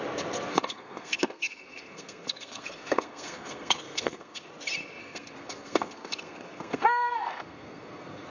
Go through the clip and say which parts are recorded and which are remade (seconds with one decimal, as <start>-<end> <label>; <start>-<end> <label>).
0.0-0.5 recorded; 0.5-4.5 remade; 4.5-5.0 recorded; 5.0-8.3 remade

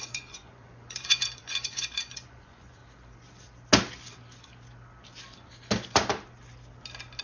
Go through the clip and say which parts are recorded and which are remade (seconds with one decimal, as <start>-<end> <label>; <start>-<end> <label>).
0.0-2.8 remade; 2.8-7.2 recorded